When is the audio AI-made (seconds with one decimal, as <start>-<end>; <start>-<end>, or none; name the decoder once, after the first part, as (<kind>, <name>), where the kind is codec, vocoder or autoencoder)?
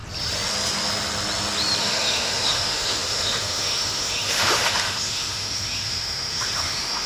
1.8-7.1 (autoencoder, DAC-VAE)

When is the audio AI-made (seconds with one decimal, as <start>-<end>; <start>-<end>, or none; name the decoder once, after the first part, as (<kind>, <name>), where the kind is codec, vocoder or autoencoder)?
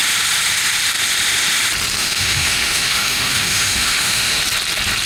2.0-4.4 (autoencoder, DAC-VAE)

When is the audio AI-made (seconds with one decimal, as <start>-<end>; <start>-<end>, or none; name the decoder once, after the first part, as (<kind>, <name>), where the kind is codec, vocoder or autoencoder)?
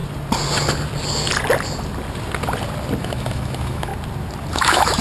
3.0-3.9 (autoencoder, DAC-VAE); 4.5-5.0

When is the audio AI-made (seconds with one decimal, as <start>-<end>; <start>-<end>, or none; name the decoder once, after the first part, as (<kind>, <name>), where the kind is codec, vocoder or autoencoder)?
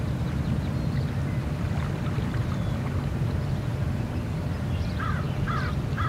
none